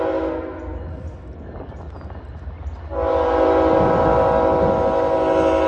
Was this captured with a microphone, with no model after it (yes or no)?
yes